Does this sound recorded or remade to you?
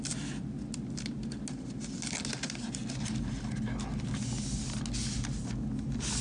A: recorded